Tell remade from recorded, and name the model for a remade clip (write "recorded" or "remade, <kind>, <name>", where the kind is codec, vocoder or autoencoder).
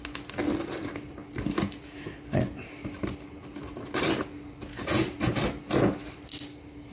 recorded